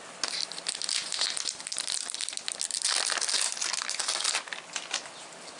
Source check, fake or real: real